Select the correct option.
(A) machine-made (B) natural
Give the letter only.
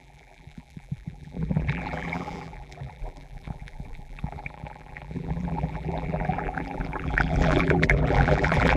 A